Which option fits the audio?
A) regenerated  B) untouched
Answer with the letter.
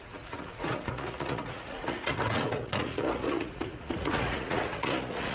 A